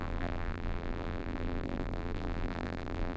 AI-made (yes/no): yes